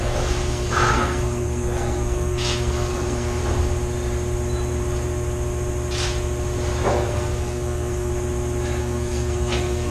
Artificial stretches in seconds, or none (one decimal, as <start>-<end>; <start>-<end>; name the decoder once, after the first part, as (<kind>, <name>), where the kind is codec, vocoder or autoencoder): 0.0-3.4 (codec, SNAC); 6.9-8.1; 8.8-9.9